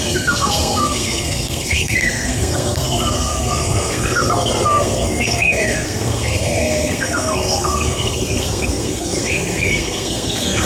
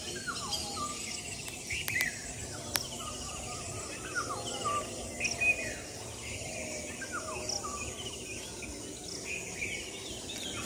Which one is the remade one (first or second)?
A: first